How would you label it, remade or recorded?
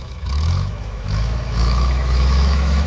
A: remade